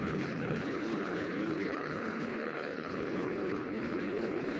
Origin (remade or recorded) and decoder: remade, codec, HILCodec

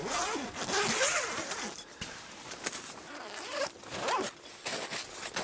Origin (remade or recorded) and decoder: recorded